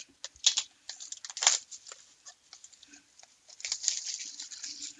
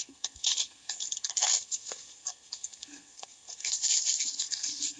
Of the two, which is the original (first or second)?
first